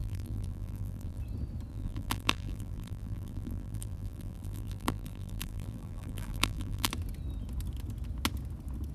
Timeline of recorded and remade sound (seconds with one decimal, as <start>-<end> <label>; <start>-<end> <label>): 0.0-1.2 remade; 1.2-1.7 recorded; 1.7-6.9 remade; 6.9-8.9 recorded